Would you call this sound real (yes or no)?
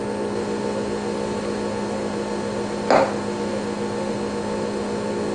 yes